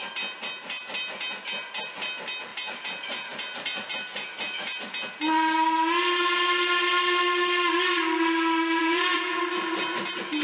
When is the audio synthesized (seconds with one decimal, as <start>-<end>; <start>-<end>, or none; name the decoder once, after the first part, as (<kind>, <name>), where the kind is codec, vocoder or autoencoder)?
8.8-9.4 (vocoder, Vocos)